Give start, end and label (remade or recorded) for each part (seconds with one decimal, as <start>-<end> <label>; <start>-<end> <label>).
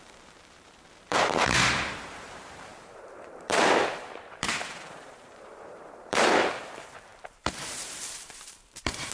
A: 0.0-9.1 remade